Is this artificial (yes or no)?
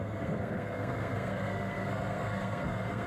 yes